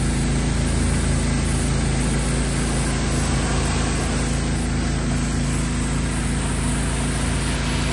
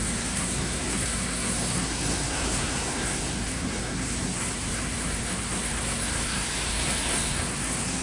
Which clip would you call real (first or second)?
first